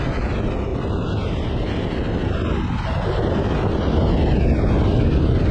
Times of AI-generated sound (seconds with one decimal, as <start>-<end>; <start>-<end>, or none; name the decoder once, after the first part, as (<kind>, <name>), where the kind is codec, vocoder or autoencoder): 0.7-1.7 (vocoder, BigVGAN v2)